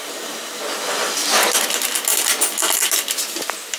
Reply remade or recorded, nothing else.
recorded